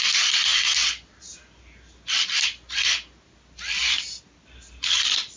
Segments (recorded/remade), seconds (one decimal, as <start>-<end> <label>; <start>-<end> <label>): 0.0-5.4 recorded